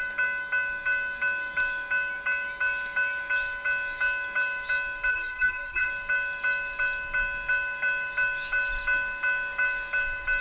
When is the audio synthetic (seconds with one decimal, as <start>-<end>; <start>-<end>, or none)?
5.1-5.9